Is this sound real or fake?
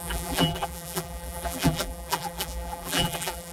fake